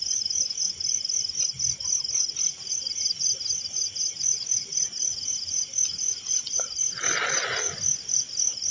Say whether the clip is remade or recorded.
recorded